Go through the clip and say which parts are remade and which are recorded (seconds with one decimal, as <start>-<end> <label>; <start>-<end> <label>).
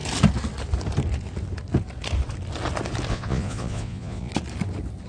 0.0-3.1 recorded; 3.1-4.3 remade; 4.3-5.1 recorded